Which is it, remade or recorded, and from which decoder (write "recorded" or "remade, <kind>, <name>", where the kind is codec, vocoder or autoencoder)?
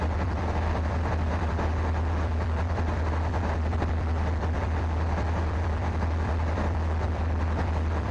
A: remade, vocoder, BigVGAN v2